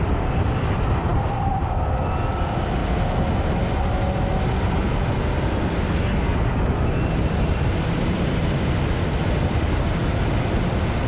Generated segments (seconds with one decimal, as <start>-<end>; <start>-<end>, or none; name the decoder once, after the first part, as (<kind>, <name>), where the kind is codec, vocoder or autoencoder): 0.0-2.8 (vocoder, BigVGAN v2); 6.7-10.0; 10.7-11.1